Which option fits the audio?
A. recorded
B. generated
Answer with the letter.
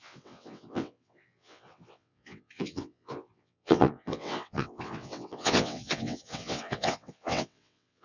B